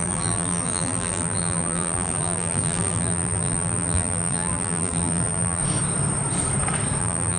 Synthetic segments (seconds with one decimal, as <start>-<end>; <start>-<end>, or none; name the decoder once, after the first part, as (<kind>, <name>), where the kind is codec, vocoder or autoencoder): 0.0-5.6 (vocoder, BigVGAN v2); 7.0-7.4